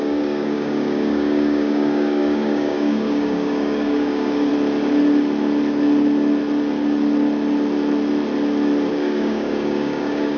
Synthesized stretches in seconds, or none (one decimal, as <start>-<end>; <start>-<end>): 0.0-4.5; 8.9-10.4